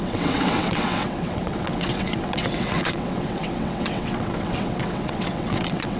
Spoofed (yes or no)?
yes